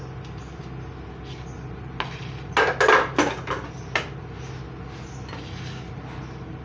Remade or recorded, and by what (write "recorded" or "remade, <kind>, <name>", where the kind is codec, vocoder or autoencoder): recorded